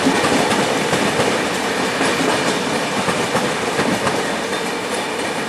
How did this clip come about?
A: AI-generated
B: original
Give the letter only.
B